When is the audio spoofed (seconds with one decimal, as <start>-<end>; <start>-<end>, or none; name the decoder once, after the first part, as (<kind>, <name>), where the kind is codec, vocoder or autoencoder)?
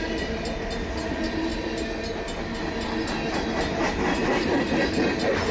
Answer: none